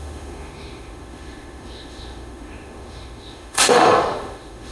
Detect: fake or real fake